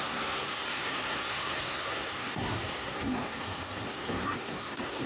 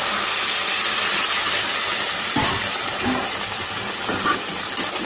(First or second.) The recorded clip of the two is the second